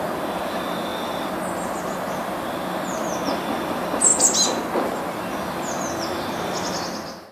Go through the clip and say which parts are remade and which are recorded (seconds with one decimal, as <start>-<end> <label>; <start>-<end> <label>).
0.0-7.3 recorded